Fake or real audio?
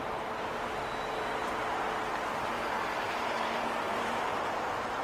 real